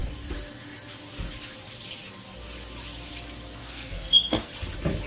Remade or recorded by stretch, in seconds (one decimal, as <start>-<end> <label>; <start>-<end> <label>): 0.0-3.6 recorded; 3.6-4.5 remade; 4.5-5.1 recorded